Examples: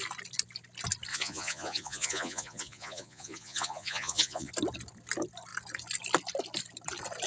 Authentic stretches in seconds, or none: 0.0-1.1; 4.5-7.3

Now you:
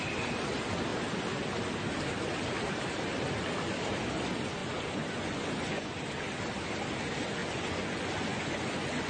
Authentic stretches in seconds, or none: 0.0-4.6; 6.0-7.4